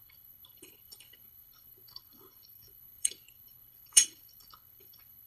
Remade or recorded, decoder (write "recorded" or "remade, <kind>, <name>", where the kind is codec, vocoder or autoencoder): remade, codec, HILCodec